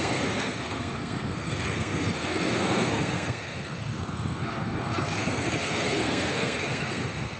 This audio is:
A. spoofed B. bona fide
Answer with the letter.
A